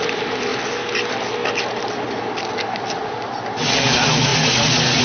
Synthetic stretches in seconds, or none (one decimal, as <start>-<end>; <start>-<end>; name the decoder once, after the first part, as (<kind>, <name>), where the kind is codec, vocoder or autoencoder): none